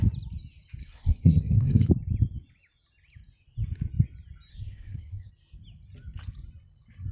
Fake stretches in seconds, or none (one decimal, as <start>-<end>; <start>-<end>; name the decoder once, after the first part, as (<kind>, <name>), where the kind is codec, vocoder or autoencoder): 0.8-1.9 (codec, SNAC); 4.5-5.3